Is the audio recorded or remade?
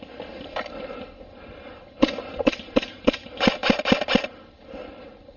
remade